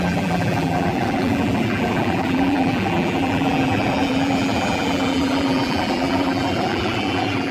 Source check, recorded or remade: remade